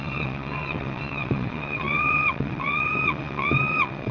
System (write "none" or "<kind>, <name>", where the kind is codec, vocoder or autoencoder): vocoder, WaveNeXt